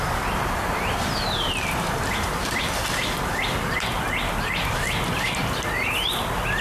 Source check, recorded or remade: remade